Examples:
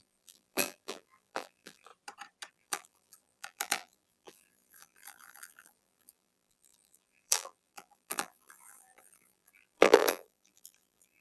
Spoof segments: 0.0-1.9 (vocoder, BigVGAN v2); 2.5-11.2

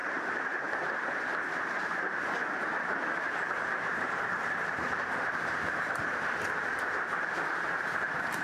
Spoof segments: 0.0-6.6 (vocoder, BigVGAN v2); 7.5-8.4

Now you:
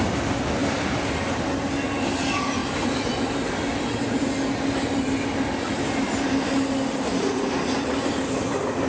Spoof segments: 0.6-1.3 (vocoder, BigVGAN v2); 2.6-4.0

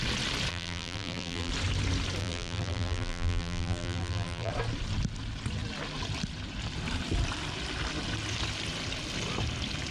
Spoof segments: 0.5-1.5 (vocoder, BigVGAN v2); 2.2-4.5

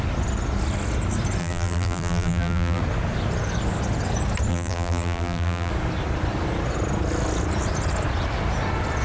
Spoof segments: 1.4-2.8 (vocoder, BigVGAN v2); 4.5-5.7

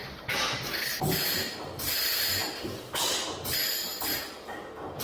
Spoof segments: 0.0-0.6 (vocoder, BigVGAN v2)